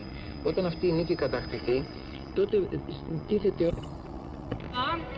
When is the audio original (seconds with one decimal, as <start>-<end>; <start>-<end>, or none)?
0.6-1.5; 4.6-5.2